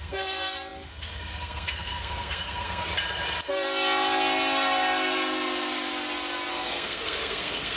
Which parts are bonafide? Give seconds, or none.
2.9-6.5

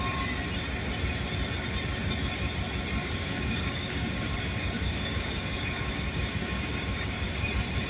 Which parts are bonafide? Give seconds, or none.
0.0-3.0; 7.5-7.9

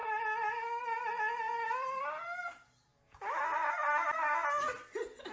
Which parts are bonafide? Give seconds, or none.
0.0-2.9; 3.4-5.3

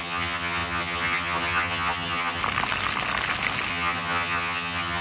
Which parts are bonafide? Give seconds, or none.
2.4-3.7

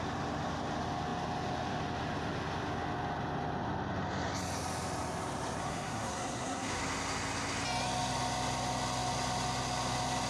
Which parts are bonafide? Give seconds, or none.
0.0-5.6; 6.8-10.3

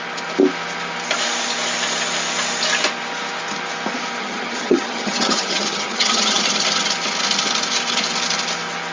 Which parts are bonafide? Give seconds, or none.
0.0-4.2; 6.4-8.9

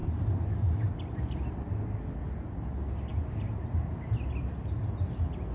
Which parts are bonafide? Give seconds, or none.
0.0-5.5

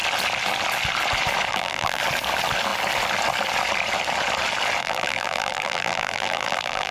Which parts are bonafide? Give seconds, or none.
0.0-1.5; 2.0-4.8